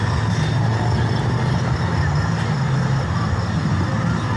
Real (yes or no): yes